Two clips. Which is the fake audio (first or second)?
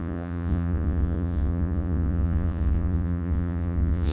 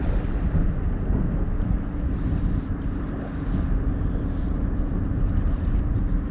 first